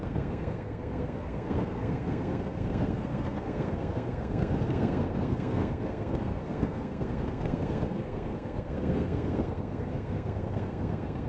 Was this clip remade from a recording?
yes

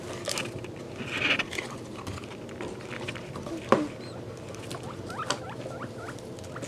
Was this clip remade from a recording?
no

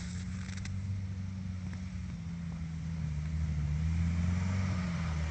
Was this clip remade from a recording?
no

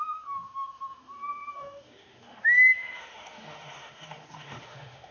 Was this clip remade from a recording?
yes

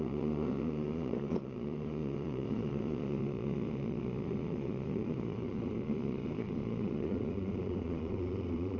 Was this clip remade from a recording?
yes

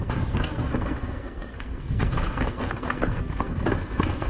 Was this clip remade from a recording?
yes